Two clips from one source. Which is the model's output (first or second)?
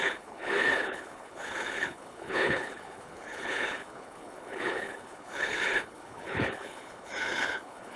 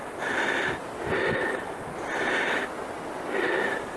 first